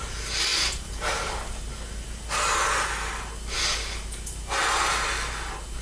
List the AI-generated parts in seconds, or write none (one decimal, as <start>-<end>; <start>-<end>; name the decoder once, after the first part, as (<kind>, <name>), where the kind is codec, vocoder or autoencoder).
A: 0.5-1.4 (vocoder, BigVGAN v2)